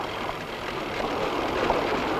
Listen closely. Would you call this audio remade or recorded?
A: recorded